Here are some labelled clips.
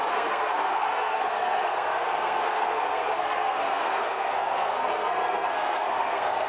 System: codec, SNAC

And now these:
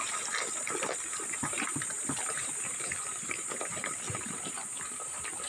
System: none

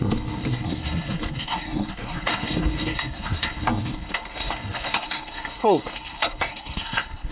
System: codec, SNAC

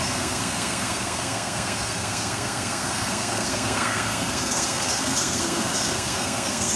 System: codec, SNAC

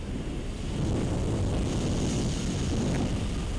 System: none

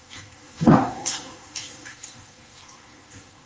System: codec, SNAC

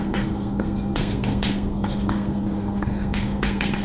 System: codec, SNAC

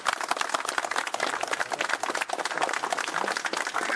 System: none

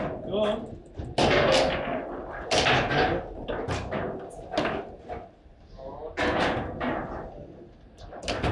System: none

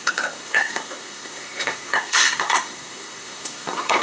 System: codec, SNAC